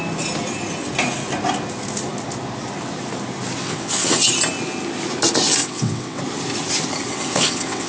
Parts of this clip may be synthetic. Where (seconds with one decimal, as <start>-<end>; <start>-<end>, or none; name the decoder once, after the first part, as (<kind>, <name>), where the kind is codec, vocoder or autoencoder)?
3.6-4.2 (vocoder, WaveNeXt); 5.6-6.2; 7.1-7.9